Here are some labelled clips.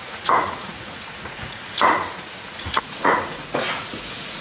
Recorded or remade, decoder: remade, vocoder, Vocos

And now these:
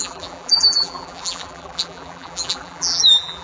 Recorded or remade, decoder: remade, vocoder, BigVGAN v2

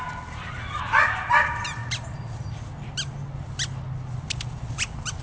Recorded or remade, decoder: recorded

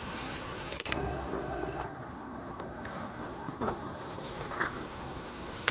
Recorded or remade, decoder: remade, codec, SNAC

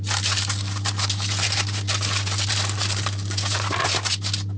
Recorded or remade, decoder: recorded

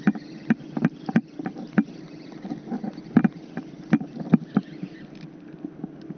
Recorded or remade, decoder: recorded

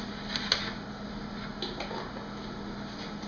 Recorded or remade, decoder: recorded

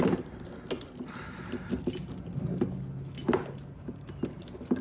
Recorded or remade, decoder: recorded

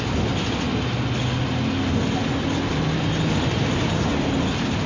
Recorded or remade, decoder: recorded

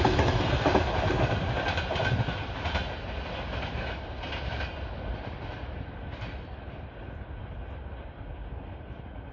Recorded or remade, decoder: recorded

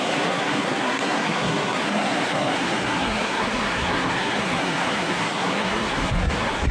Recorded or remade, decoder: remade, codec, SNAC